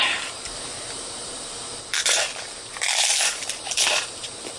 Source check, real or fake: fake